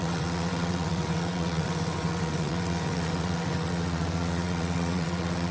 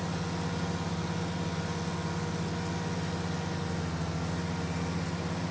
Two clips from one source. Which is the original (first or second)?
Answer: second